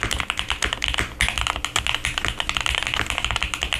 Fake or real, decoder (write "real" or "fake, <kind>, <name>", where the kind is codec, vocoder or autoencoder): real